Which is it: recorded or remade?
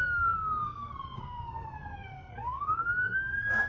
remade